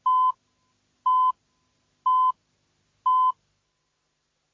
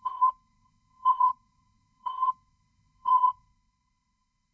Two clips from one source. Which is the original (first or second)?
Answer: first